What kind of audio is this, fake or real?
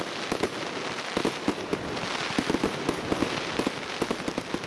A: real